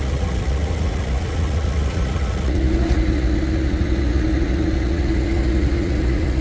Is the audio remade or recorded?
remade